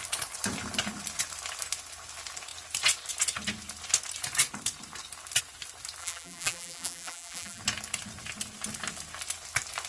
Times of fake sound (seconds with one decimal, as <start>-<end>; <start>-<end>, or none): 6.0-7.6